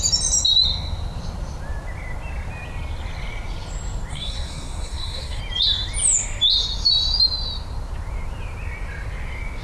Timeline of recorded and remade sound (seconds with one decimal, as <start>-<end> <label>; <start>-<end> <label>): 0.0-4.1 recorded; 4.1-5.4 remade; 5.4-9.6 recorded